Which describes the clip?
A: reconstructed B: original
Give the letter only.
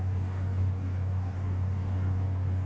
A